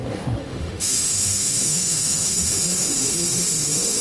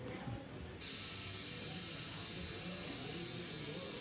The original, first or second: second